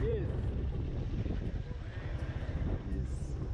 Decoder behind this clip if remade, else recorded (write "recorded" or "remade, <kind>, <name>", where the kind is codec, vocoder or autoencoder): recorded